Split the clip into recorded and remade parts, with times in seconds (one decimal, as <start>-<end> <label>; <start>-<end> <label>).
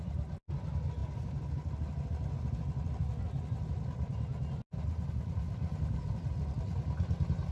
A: 0.0-7.5 recorded